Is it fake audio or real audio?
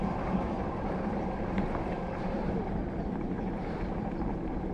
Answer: fake